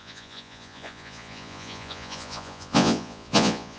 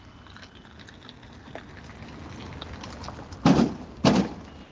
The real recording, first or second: second